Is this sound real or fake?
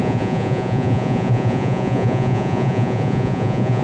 fake